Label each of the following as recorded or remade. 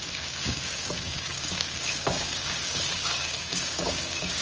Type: remade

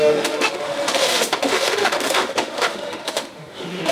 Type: remade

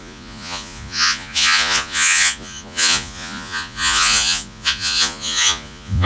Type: remade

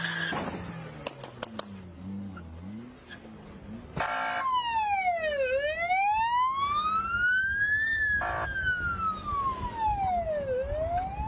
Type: recorded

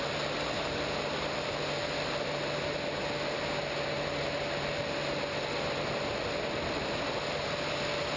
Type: recorded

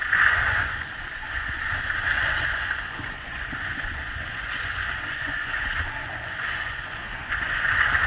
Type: remade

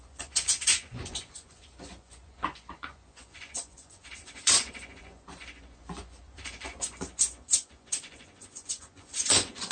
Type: remade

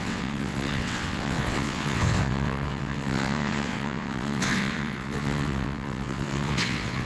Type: remade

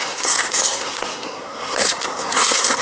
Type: remade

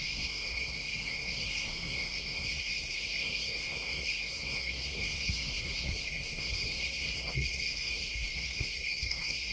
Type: remade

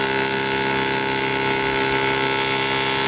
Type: recorded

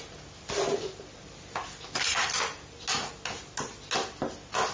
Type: recorded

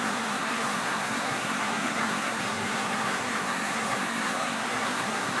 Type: remade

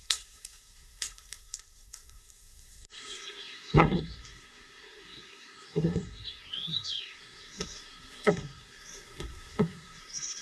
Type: remade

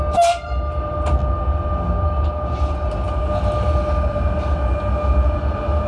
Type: recorded